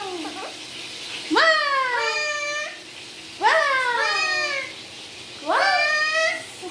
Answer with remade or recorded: recorded